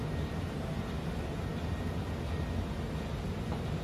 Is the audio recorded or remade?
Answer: recorded